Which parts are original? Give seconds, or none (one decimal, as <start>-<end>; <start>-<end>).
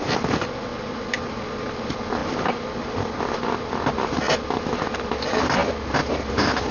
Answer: 2.2-3.9; 5.6-6.3